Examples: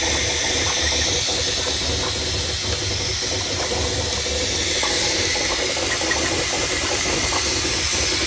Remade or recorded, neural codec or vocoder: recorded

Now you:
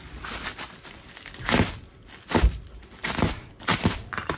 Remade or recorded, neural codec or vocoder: recorded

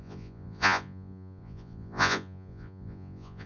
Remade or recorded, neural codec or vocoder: remade, vocoder, Vocos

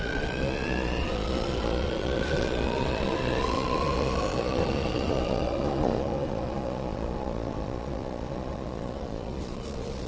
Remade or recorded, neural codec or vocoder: remade, vocoder, Vocos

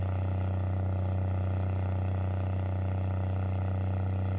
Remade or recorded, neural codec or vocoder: recorded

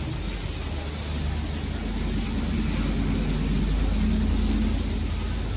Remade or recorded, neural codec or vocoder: recorded